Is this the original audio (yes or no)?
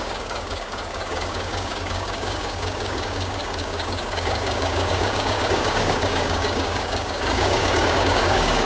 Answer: no